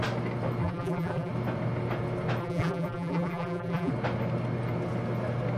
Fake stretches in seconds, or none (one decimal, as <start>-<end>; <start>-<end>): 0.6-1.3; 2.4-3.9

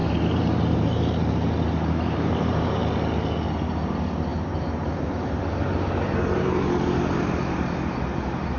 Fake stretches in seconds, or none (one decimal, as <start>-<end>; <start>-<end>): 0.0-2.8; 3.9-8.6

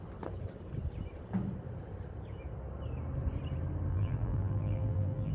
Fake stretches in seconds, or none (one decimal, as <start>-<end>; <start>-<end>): 3.9-5.3

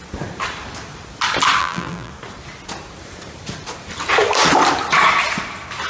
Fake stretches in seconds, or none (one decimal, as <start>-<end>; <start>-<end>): 1.6-2.1

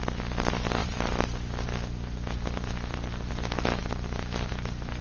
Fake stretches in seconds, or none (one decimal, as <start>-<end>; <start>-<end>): 0.8-3.3; 3.8-4.5

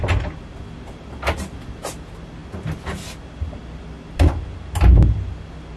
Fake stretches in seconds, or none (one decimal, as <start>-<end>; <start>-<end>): none